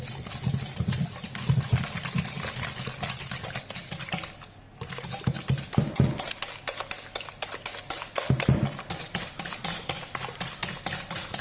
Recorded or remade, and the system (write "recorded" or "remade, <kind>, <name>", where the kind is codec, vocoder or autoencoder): recorded